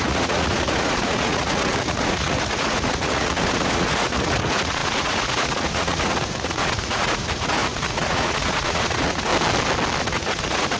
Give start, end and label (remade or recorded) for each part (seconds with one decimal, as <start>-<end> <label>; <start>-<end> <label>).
0.0-9.3 remade; 9.3-10.0 recorded; 10.0-10.8 remade